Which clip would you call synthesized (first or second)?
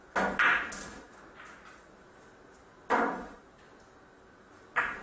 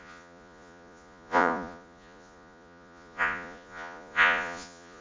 second